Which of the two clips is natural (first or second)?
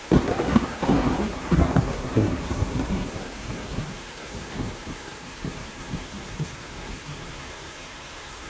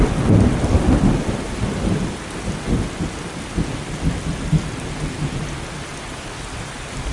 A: second